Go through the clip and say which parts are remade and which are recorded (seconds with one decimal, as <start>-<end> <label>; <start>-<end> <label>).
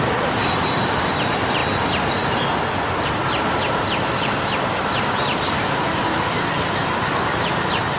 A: 0.0-8.0 recorded